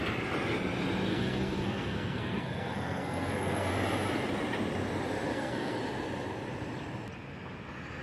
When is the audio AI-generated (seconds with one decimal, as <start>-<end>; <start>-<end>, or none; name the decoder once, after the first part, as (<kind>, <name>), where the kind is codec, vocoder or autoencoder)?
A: 1.1-3.7 (codec, SNAC); 5.3-5.8